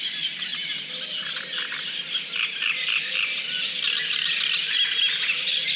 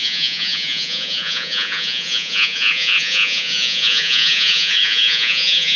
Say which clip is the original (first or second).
first